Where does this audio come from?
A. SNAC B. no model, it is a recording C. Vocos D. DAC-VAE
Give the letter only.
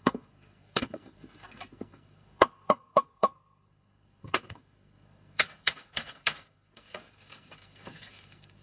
A